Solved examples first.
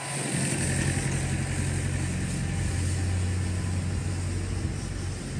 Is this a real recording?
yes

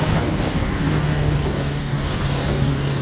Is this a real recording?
no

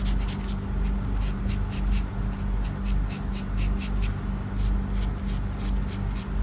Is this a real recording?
yes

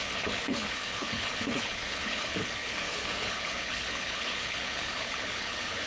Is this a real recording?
no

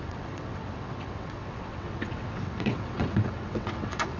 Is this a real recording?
no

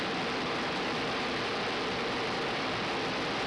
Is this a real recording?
yes